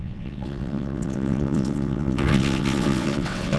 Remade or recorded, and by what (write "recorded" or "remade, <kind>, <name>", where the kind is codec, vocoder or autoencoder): remade, vocoder, WaveNeXt